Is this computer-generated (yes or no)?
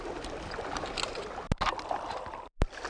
no